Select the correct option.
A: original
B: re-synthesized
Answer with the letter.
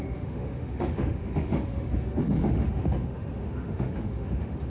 B